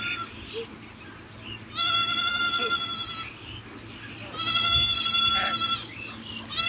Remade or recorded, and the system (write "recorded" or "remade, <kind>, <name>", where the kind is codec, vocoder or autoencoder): recorded